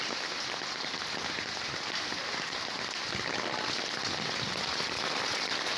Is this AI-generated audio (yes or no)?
no